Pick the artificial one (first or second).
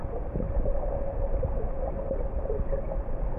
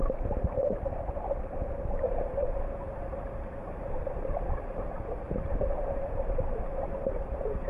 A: second